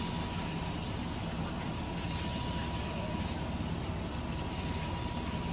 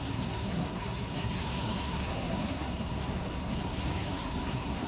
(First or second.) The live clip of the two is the first